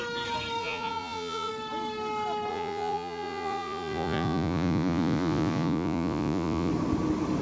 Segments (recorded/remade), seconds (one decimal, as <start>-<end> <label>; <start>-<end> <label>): 0.0-0.6 recorded; 0.6-1.5 remade; 1.5-2.5 recorded; 2.5-6.7 remade; 6.7-7.4 recorded